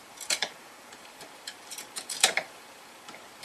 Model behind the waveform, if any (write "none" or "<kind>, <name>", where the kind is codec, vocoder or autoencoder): vocoder, BigVGAN v2